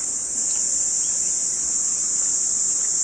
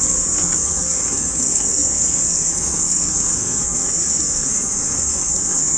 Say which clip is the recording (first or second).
first